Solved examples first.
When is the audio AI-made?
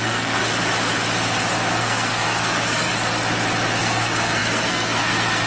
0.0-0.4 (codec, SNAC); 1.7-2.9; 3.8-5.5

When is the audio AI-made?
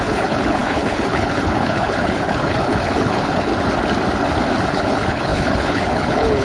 0.0-3.5 (codec, HILCodec); 4.7-6.4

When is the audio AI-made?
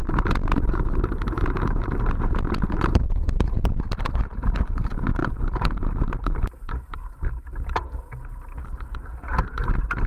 0.0-4.2 (vocoder, BigVGAN v2); 5.2-8.0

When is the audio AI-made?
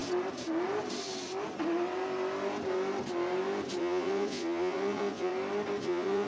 3.8-5.3 (vocoder, Vocos); 5.8-6.3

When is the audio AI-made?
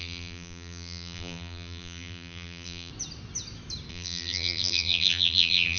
0.0-2.9 (vocoder, BigVGAN v2); 3.9-5.8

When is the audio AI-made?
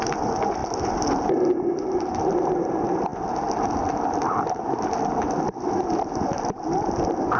none